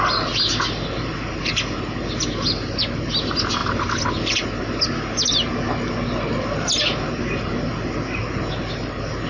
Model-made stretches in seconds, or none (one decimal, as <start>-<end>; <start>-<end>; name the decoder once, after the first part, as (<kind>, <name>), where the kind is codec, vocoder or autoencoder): none